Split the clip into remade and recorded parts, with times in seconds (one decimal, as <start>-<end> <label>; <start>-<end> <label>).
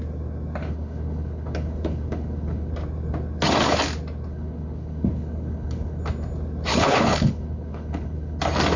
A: 0.0-0.6 recorded; 0.6-2.7 remade; 2.7-4.3 recorded; 4.3-6.0 remade; 6.0-6.7 recorded; 6.7-8.4 remade; 8.4-8.8 recorded